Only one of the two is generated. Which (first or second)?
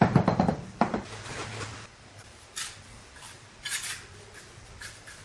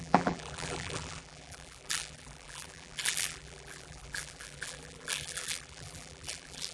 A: second